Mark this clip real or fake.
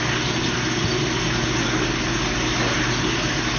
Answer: real